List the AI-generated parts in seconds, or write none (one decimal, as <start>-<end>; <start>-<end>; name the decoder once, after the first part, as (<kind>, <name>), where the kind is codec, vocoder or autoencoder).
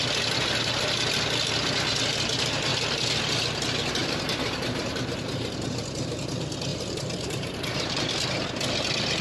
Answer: 4.0-5.0 (vocoder, BigVGAN v2); 6.7-8.1